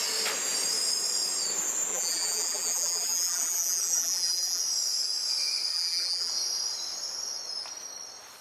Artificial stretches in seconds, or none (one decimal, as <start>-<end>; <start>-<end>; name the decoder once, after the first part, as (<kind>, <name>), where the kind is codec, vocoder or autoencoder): 1.9-4.6 (vocoder, BigVGAN v2); 5.7-6.3